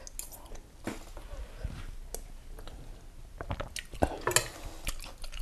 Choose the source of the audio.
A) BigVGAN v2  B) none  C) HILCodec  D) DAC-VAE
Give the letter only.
B